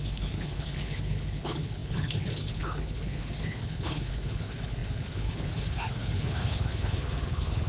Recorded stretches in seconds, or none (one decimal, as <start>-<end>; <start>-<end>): none